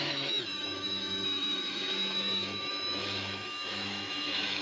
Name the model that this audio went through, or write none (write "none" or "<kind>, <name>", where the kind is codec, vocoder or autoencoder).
autoencoder, DAC-VAE